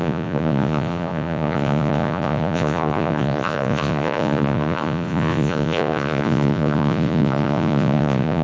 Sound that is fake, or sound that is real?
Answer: fake